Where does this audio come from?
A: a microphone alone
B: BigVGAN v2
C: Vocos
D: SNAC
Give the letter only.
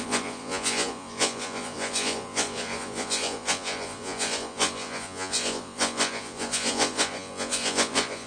C